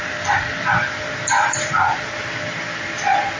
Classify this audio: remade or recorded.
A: remade